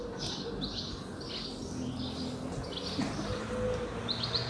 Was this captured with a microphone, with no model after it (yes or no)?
yes